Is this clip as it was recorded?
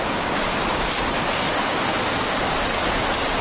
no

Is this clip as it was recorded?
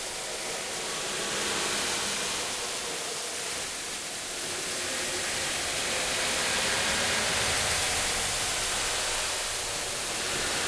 yes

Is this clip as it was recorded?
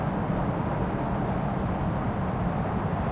yes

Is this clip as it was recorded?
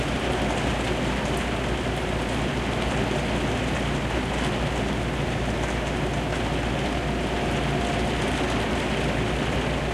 yes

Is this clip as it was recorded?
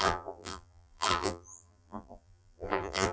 no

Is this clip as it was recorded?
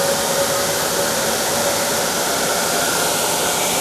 yes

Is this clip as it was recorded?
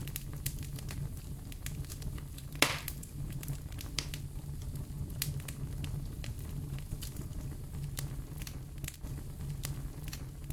yes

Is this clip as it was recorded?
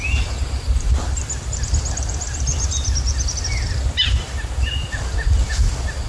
no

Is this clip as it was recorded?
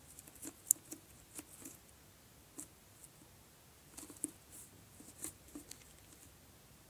yes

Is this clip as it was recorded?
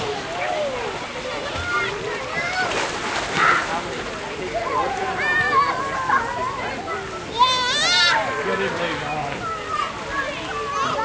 yes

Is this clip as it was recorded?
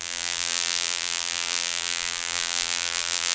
no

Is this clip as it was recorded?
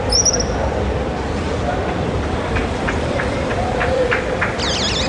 no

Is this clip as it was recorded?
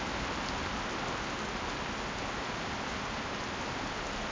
yes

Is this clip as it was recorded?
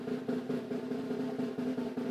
yes